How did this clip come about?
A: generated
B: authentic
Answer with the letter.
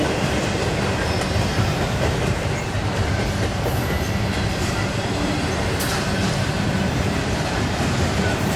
A